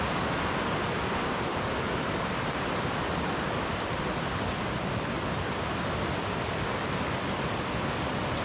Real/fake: real